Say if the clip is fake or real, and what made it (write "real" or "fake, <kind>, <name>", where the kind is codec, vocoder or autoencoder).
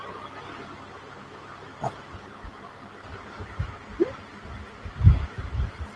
real